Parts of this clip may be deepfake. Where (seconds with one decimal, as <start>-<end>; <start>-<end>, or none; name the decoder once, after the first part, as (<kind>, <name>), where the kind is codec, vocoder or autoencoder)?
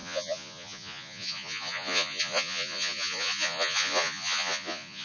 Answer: 0.0-5.0 (vocoder, Vocos)